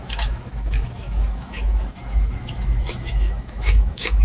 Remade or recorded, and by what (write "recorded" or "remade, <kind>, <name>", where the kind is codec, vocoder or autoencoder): remade, autoencoder, DAC-VAE